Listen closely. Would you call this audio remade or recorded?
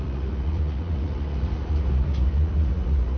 remade